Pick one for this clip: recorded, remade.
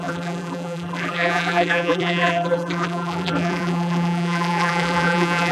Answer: remade